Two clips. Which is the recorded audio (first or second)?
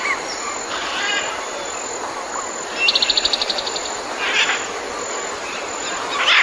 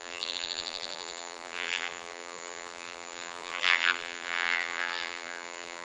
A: first